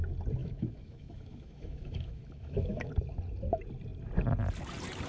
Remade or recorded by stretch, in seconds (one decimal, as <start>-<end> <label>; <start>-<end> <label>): 0.0-0.4 recorded; 0.4-2.9 remade; 2.9-5.1 recorded